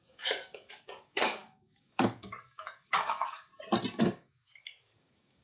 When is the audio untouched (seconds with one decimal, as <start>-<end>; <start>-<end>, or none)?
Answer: 3.5-4.0